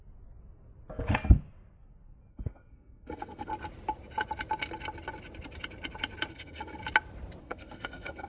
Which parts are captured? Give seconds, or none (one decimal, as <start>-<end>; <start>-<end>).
0.0-2.3; 3.5-6.3; 6.8-7.4